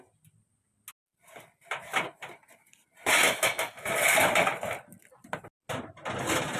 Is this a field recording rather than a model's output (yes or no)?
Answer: yes